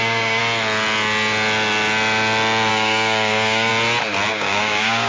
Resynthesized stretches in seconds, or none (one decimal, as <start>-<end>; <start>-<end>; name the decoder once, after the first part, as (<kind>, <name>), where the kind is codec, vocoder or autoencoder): 0.0-0.4 (codec, DAC); 2.7-3.7; 4.3-5.1